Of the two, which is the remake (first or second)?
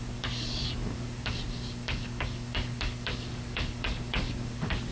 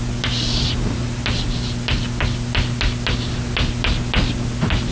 first